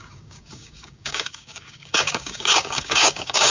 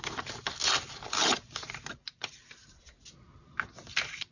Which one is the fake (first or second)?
first